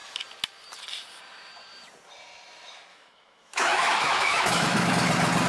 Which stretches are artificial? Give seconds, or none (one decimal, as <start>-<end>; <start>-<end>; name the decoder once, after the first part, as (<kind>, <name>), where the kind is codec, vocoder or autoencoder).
2.9-4.9 (autoencoder, DAC-VAE)